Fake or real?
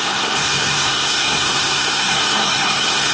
fake